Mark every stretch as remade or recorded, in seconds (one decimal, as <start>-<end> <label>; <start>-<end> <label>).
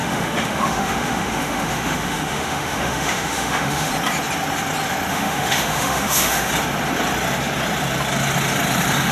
0.0-3.9 remade; 3.9-5.1 recorded; 5.1-6.5 remade; 6.5-9.1 recorded